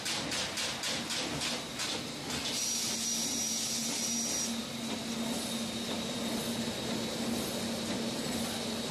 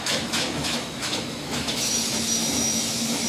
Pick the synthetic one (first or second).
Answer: second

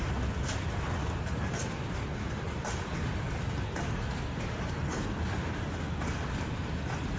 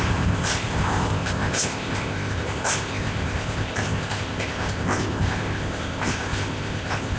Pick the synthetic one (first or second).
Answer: second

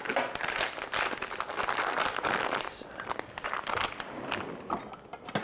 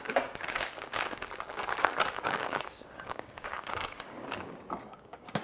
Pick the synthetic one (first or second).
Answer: second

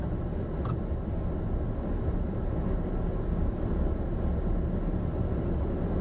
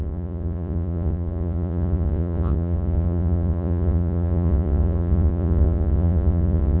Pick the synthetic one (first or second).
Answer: second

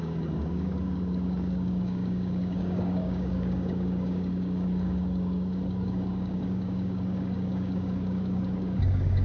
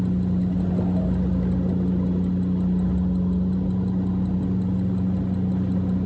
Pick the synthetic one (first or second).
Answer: first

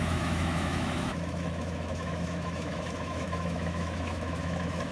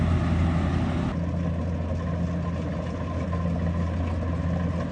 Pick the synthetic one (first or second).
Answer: first